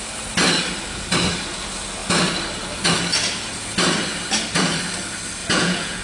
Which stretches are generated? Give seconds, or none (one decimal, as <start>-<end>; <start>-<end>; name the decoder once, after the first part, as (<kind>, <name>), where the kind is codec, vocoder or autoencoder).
5.4-6.0 (vocoder, Vocos)